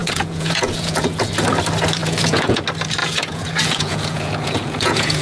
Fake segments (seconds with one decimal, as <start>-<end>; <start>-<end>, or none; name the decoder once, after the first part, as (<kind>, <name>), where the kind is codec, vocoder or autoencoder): 0.0-1.3 (vocoder, Vocos); 2.0-2.6; 3.0-5.2